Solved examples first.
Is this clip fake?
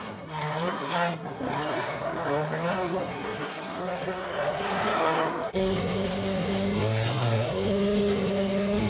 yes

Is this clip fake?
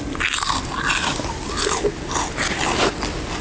no